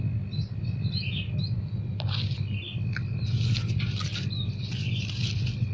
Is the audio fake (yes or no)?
no